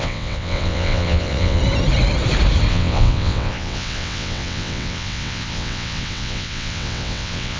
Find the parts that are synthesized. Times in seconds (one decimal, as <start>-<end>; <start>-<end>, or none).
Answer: 0.0-1.6; 2.7-7.6